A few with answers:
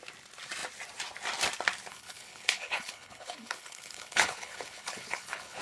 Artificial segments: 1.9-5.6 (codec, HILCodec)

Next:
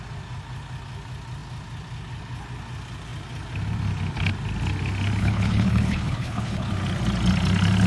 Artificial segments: 5.2-6.7 (codec, HILCodec)

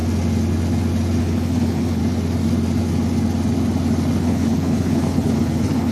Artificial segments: 1.2-2.0 (codec, HILCodec); 4.2-5.9

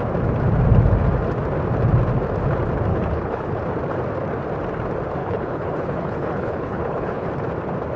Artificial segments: 2.9-3.5 (codec, HILCodec); 5.2-7.3

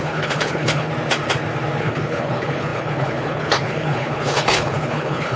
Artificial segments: 0.0-0.9 (codec, HILCodec); 1.8-5.4

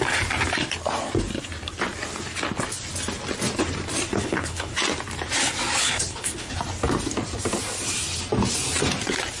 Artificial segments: 4.2-4.7 (codec, HILCodec); 5.8-6.5

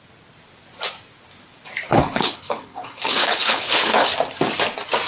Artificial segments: 1.9-4.1 (codec, HILCodec)